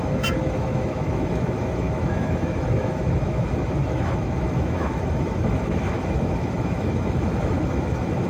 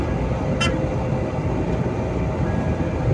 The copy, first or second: first